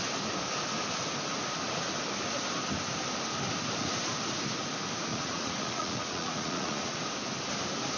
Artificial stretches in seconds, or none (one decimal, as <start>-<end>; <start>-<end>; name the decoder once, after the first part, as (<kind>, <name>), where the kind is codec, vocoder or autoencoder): 5.1-7.0 (vocoder, Vocos)